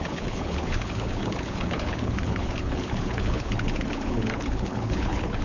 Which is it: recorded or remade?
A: remade